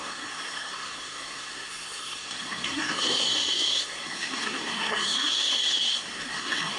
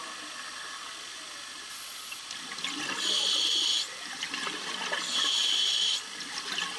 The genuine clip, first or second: second